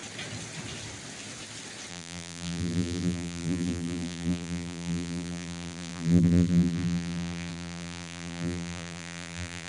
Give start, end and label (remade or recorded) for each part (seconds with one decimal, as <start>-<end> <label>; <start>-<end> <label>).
0.0-1.9 recorded; 1.9-9.7 remade